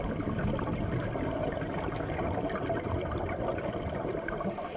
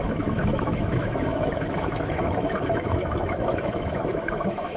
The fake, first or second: second